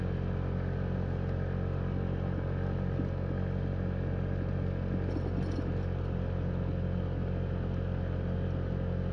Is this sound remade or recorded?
recorded